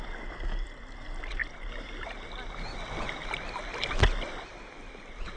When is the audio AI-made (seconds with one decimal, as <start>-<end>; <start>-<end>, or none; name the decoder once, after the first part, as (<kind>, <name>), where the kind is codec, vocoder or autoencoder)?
none